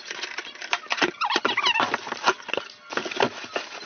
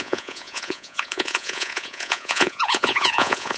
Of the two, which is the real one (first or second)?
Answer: first